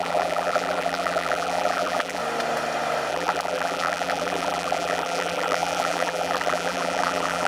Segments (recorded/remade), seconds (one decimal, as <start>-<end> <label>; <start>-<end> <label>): 0.0-2.2 remade; 2.2-3.1 recorded; 3.1-7.5 remade